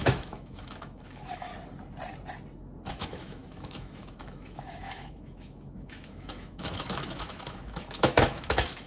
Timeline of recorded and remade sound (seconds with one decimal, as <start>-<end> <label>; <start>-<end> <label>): 0.0-1.5 remade; 1.5-2.9 recorded; 2.9-8.9 remade